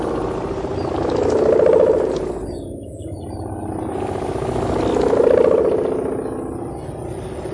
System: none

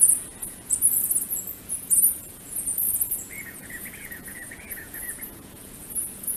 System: vocoder, Vocos